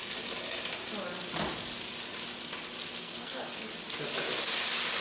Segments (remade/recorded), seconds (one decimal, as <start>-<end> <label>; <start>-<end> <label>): 0.0-3.0 recorded; 3.0-3.7 remade; 3.7-5.0 recorded